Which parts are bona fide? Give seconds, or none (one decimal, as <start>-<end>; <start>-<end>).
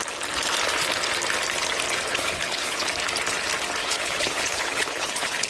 0.0-2.1; 2.9-3.8